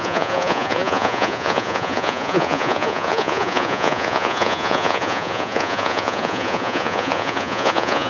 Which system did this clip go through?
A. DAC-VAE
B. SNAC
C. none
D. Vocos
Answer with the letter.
D